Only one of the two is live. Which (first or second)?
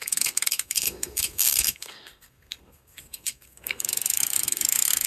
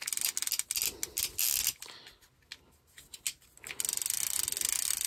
second